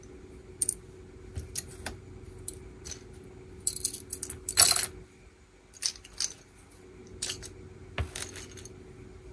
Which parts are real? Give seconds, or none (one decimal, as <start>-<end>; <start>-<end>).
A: 0.0-9.3